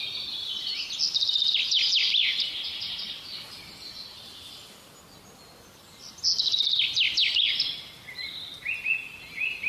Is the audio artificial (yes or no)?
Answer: no